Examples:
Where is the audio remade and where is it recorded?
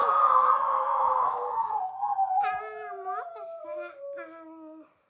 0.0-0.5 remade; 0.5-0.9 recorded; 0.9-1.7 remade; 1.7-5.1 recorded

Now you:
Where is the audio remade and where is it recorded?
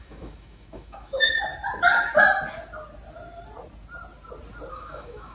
0.0-1.5 remade; 1.5-4.7 recorded; 4.7-5.3 remade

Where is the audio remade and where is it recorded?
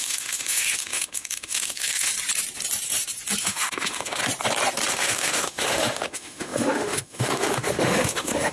0.0-2.1 remade; 2.1-3.4 recorded; 3.4-4.2 remade; 4.2-4.9 recorded; 4.9-8.5 remade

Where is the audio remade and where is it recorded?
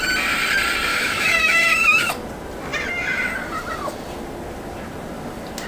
0.0-0.9 recorded; 0.9-2.1 remade; 2.1-5.7 recorded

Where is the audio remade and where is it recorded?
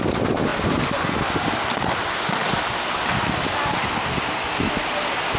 0.0-5.4 recorded